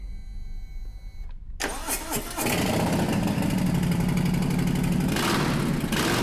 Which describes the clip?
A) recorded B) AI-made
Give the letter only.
A